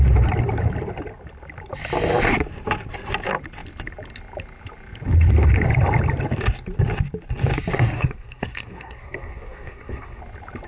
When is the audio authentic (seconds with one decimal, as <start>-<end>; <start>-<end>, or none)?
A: 0.0-7.7; 10.2-10.7